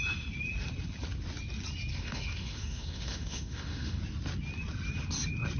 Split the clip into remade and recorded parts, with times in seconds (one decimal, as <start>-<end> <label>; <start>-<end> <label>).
0.0-1.9 recorded; 1.9-4.0 remade; 4.0-5.6 recorded